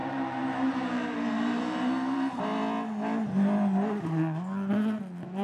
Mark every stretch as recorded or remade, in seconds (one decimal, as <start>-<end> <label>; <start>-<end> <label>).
0.0-2.4 remade; 2.4-5.4 recorded